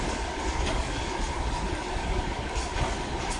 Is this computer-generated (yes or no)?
yes